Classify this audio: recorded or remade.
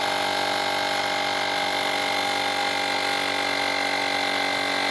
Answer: recorded